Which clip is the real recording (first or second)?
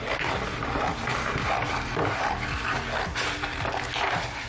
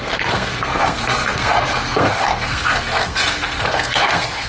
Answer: first